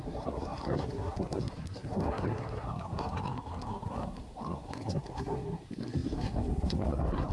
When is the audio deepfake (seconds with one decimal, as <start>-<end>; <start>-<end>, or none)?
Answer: 0.0-7.3